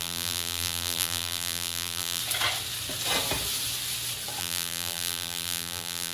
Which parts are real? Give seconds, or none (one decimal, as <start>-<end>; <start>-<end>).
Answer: 2.2-4.4